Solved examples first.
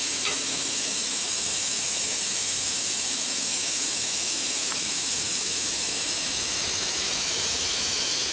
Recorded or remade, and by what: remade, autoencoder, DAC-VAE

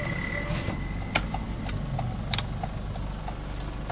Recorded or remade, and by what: recorded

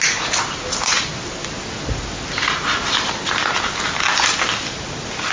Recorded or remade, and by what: recorded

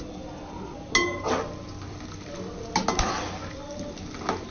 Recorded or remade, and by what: recorded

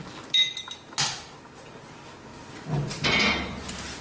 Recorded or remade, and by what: recorded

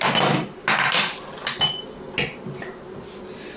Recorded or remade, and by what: recorded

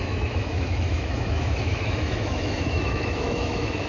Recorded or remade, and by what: remade, autoencoder, DAC-VAE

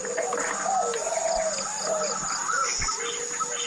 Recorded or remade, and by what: recorded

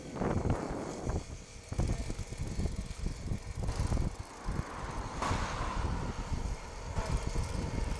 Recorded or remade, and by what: recorded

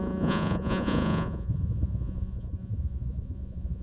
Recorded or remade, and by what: remade, vocoder, Vocos